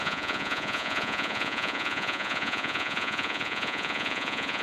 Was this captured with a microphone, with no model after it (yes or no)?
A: no